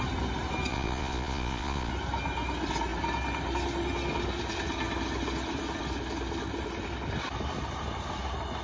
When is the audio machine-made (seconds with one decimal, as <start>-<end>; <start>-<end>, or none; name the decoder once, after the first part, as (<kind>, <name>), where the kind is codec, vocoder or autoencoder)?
0.7-1.9 (vocoder, Vocos)